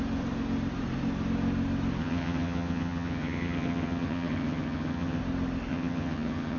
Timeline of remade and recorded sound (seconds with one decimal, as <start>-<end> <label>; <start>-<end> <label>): 0.0-2.0 recorded; 2.0-5.2 remade; 5.2-5.7 recorded; 5.7-6.6 remade